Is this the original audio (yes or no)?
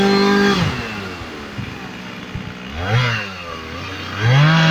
yes